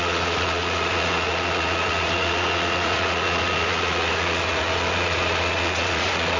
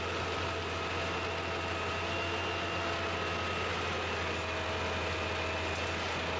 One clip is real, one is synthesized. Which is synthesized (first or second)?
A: first